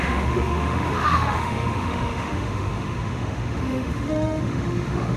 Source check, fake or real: fake